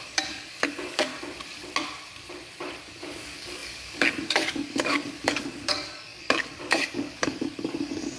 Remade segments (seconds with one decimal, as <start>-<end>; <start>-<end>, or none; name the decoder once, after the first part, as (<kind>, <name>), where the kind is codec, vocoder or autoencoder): 0.0-1.1 (codec, DAC); 2.8-8.2